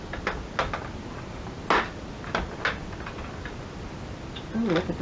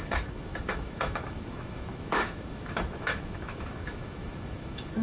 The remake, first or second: second